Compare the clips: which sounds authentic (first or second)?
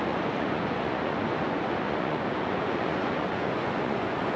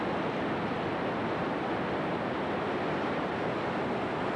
second